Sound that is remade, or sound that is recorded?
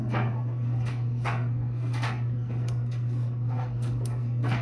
remade